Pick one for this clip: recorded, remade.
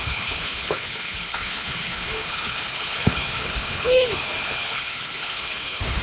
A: remade